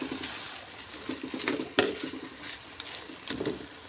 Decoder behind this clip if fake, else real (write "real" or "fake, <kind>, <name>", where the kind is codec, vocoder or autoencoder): real